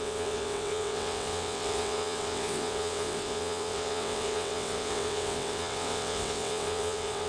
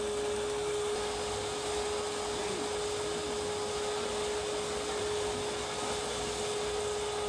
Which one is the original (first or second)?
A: second